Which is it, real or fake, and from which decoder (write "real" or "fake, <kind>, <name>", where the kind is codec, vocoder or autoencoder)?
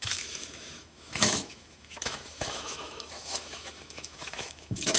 fake, autoencoder, DAC-VAE